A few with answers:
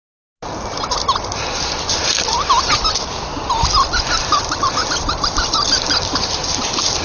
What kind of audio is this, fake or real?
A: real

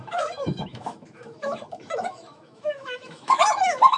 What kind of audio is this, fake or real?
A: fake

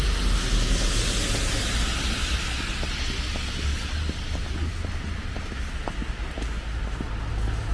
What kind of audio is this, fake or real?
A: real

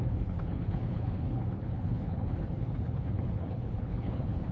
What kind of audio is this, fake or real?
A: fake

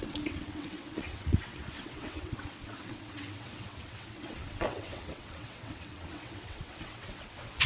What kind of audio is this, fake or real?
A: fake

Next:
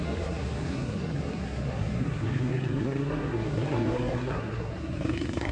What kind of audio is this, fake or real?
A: fake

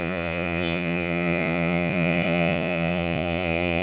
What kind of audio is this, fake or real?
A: fake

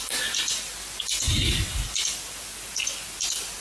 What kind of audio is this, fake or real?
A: real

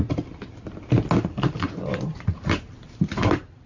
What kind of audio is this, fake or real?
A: real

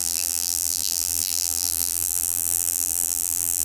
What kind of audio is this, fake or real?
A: fake